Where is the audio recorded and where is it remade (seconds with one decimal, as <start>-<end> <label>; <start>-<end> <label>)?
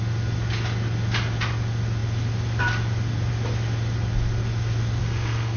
0.0-5.0 recorded; 5.0-5.6 remade